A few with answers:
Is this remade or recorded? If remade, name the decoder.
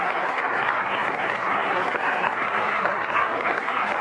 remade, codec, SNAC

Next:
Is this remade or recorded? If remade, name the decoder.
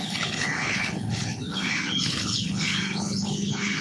remade, codec, HILCodec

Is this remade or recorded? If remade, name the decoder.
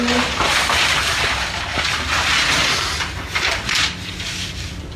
recorded